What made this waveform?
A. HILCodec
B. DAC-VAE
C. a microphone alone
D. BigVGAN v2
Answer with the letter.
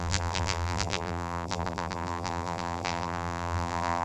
D